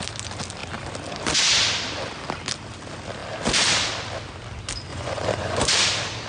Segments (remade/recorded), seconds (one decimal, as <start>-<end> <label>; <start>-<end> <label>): 0.0-4.9 recorded; 4.9-5.6 remade; 5.6-6.3 recorded